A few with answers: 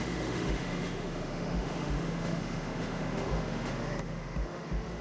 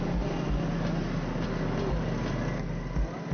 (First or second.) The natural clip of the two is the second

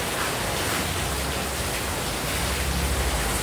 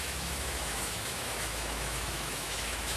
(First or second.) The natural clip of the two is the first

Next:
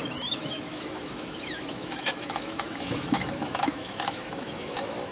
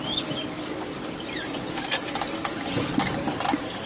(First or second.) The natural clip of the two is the second